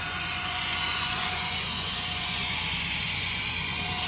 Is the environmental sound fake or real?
fake